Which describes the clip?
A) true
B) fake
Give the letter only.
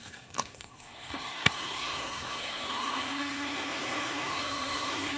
B